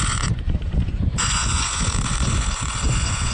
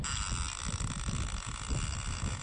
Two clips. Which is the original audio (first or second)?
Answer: second